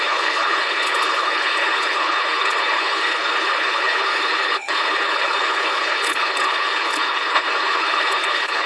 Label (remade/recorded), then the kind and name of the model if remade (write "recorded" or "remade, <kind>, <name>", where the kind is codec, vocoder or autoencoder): remade, codec, HILCodec